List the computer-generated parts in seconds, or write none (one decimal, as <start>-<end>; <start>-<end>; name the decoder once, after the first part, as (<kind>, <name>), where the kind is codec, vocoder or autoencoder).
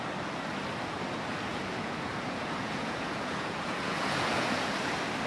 1.5-4.7 (vocoder, Vocos)